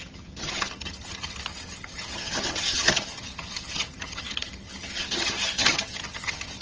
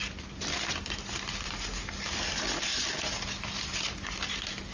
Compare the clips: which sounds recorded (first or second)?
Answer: second